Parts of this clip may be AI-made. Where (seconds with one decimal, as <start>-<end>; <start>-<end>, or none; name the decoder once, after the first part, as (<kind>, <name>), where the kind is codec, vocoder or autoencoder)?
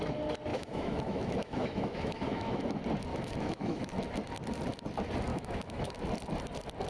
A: 0.5-2.6 (autoencoder, DAC-VAE); 3.1-3.9; 5.3-6.0